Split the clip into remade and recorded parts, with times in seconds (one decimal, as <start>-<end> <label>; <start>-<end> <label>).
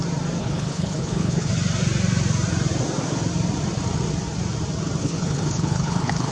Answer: 0.0-0.4 recorded; 0.4-1.5 remade; 1.5-5.0 recorded; 5.0-6.3 remade